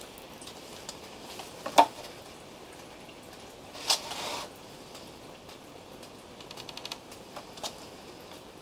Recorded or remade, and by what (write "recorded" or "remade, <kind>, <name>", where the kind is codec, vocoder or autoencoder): recorded